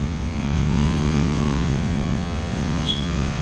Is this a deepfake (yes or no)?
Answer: yes